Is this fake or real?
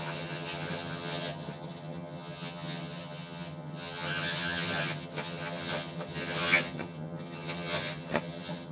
fake